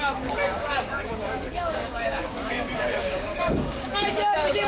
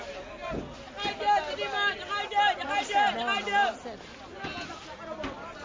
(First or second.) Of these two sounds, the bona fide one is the second